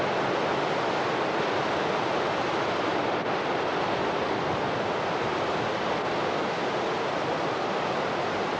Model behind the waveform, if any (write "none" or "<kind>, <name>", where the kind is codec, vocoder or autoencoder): none